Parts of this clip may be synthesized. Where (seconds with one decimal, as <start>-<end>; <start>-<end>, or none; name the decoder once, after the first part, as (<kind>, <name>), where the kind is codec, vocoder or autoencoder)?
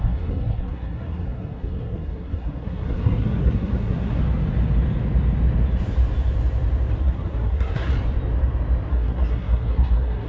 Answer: 0.0-4.2 (codec, SNAC); 7.0-7.9; 8.9-10.3